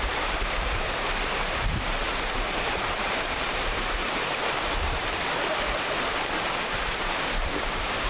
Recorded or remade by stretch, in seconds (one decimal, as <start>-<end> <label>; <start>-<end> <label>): 0.0-5.0 remade; 5.0-6.8 recorded; 6.8-8.1 remade